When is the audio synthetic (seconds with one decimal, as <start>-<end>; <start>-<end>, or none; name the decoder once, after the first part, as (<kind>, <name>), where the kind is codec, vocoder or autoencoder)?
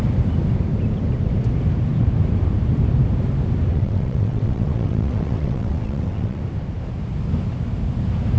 3.7-6.4 (vocoder, WaveNeXt)